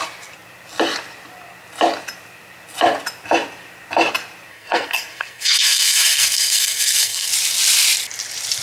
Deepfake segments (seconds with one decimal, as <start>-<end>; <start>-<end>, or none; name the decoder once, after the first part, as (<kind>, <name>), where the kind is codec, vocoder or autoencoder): 4.5-7.3 (codec, SNAC)